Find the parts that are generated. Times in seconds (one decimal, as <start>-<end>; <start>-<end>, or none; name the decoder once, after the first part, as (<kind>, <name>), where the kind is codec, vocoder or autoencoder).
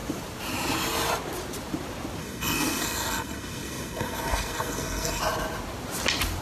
2.2-5.2 (codec, SNAC)